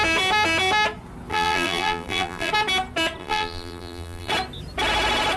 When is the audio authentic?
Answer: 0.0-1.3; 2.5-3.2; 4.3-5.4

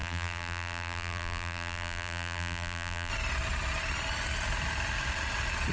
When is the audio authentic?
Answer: 3.1-5.7

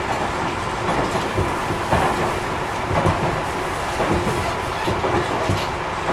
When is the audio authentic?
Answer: 0.0-6.1

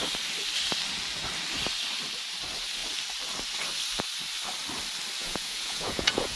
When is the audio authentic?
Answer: 0.0-5.2

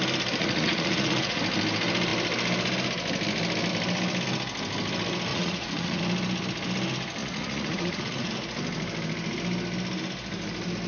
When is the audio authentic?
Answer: 0.0-0.4; 1.4-5.3; 6.0-7.2; 8.3-10.9

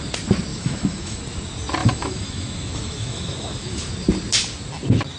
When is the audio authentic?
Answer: 0.0-0.5; 1.2-1.8; 3.9-5.2